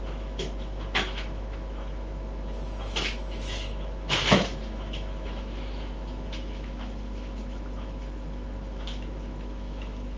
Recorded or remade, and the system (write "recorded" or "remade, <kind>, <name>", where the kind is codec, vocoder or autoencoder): remade, autoencoder, DAC-VAE